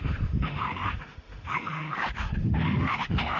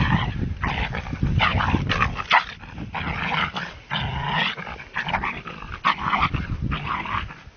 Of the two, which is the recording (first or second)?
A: second